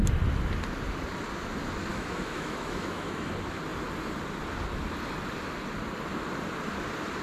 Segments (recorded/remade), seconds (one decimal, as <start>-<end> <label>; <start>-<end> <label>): 0.0-1.9 recorded; 1.9-3.3 remade; 3.3-7.2 recorded

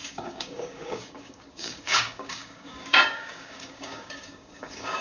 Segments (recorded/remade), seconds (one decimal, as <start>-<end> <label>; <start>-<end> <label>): 0.0-5.0 remade

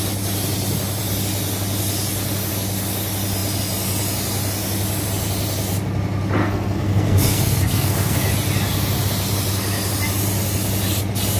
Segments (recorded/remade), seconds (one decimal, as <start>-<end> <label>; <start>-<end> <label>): 0.0-6.4 recorded; 6.4-8.3 remade; 8.3-11.4 recorded

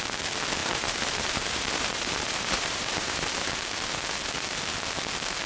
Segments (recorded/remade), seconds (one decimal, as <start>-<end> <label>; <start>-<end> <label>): 0.0-0.6 recorded; 0.6-3.5 remade; 3.5-5.5 recorded

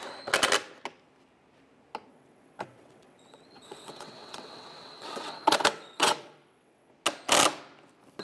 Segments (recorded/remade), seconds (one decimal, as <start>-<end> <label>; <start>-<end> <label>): 0.0-2.1 recorded; 2.1-6.9 remade; 6.9-8.2 recorded